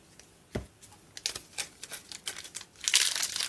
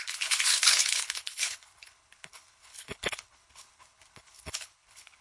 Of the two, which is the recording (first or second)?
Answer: first